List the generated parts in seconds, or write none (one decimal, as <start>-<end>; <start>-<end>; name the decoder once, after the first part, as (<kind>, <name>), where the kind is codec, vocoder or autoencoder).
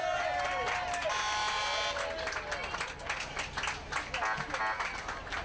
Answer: none